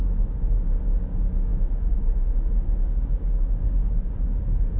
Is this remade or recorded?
remade